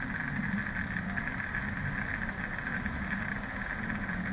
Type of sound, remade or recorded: recorded